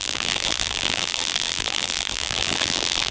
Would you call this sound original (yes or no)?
no